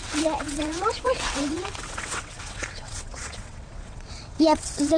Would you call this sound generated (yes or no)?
yes